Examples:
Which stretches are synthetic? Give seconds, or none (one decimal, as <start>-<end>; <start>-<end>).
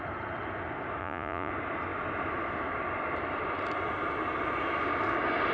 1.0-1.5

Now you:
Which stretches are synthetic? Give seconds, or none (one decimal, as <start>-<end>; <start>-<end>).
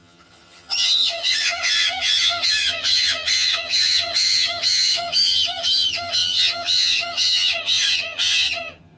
0.0-9.0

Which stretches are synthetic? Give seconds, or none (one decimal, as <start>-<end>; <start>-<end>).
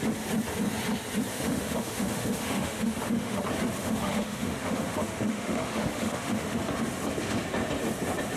1.3-3.4; 3.8-6.6